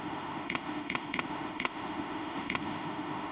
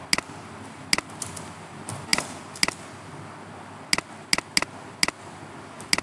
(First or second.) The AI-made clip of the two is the first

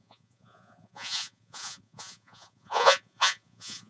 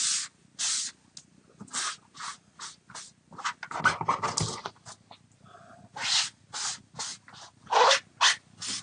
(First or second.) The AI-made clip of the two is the first